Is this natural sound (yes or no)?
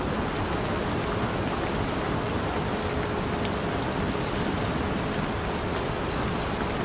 yes